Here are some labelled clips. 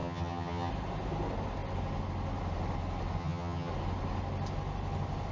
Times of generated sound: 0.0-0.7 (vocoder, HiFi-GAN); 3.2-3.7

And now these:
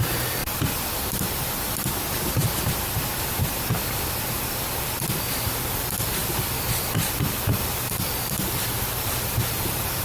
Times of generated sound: 0.0-0.4 (vocoder, BigVGAN v2); 5.2-10.0

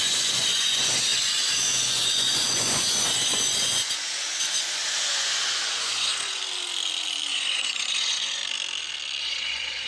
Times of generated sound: 0.0-6.4 (vocoder, Vocos); 7.3-8.4; 9.2-9.9

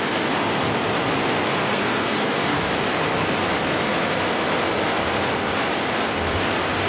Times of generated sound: 1.7-2.6 (codec, SNAC)

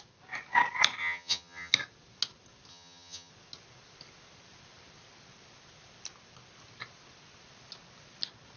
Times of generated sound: 1.0-1.7 (vocoder, HiFi-GAN); 2.7-3.3